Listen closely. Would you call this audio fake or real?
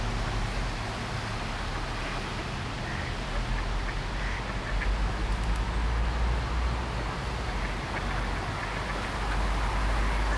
real